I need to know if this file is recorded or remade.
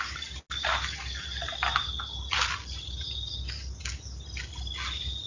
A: recorded